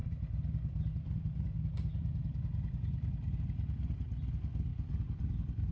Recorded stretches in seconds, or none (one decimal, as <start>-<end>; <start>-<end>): 3.4-4.7